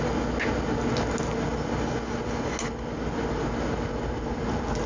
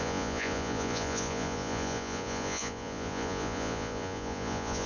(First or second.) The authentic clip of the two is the first